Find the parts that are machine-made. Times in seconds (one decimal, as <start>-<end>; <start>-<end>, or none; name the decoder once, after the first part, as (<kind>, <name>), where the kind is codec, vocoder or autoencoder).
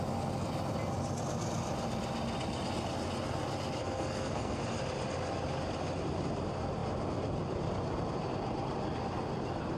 3.8-4.6 (codec, SNAC)